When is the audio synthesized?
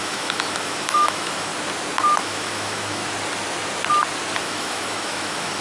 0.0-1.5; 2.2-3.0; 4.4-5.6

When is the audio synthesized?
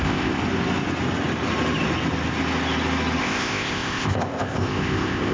0.0-0.4; 3.2-5.3